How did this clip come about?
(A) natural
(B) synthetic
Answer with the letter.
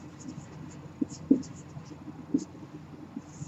A